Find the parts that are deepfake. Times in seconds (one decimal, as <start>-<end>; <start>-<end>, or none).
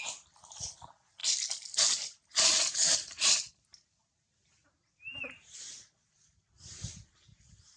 none